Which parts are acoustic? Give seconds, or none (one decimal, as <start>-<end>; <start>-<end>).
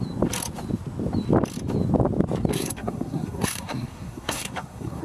0.0-2.5